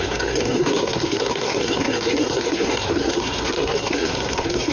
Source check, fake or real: fake